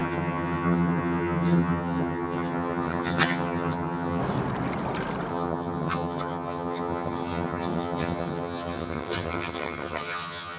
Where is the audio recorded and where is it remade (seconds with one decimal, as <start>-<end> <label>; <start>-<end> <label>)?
0.0-4.2 remade; 4.2-5.3 recorded; 5.3-10.6 remade